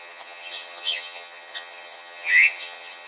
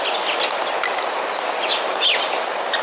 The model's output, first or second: first